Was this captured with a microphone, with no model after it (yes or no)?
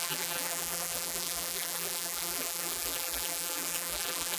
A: no